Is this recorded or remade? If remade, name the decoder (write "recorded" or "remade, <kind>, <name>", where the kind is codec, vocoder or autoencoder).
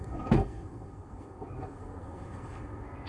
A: remade, codec, SNAC